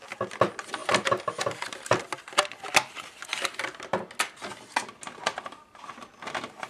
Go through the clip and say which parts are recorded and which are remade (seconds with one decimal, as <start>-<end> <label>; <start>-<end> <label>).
0.0-6.7 recorded